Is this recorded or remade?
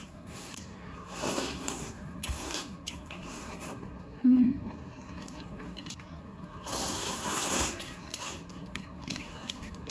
remade